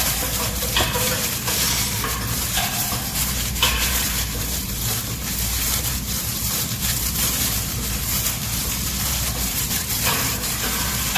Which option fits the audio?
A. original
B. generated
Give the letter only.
B